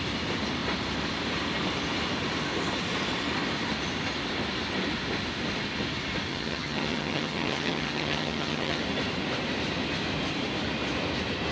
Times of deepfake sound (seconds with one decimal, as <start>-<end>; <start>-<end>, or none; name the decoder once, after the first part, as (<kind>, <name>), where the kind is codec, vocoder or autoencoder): 6.3-8.8 (vocoder, HiFi-GAN)